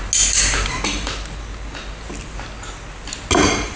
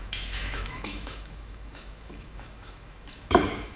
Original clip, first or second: first